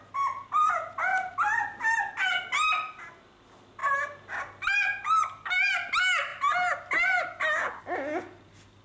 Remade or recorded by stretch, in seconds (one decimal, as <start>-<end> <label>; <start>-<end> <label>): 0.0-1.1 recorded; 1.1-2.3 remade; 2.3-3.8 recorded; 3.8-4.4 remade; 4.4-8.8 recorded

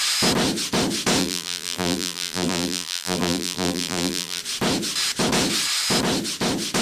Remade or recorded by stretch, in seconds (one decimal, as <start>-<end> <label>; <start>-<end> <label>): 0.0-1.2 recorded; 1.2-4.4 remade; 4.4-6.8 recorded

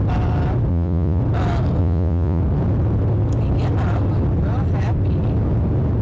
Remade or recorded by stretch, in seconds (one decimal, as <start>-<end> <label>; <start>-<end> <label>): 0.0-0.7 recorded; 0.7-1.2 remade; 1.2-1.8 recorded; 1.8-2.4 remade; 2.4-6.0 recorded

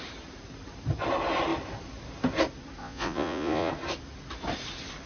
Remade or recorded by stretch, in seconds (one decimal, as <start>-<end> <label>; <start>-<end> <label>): 0.0-2.8 recorded; 2.8-3.7 remade; 3.7-5.1 recorded

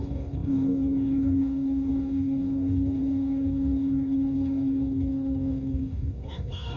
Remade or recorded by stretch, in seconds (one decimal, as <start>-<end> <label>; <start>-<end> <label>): 0.0-6.8 remade

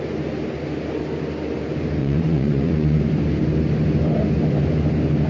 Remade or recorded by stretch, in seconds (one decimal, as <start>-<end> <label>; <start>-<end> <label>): 0.0-2.0 recorded; 2.0-3.0 remade; 3.0-5.3 recorded

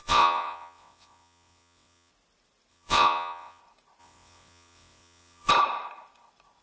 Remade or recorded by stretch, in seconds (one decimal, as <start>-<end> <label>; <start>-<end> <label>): 0.0-2.1 remade; 2.1-2.7 recorded; 2.7-3.6 remade; 3.6-4.0 recorded; 4.0-5.5 remade; 5.5-6.6 recorded